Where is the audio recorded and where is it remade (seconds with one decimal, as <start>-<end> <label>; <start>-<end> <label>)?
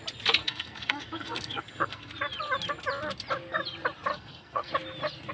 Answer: 0.0-0.4 recorded; 0.4-2.1 remade; 2.1-4.1 recorded; 4.1-4.7 remade; 4.7-5.3 recorded